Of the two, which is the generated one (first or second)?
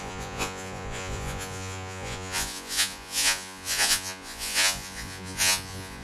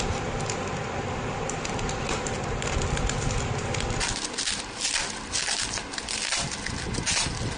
first